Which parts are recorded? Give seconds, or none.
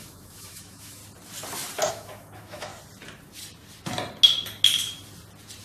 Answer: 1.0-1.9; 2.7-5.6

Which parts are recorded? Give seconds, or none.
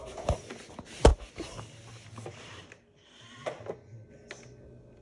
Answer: 0.0-5.0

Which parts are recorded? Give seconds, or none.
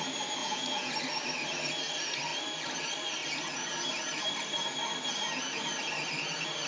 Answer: 0.0-0.4; 0.9-6.7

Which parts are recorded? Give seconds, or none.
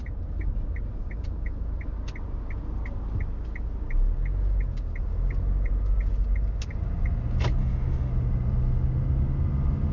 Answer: 0.0-7.6; 8.1-9.9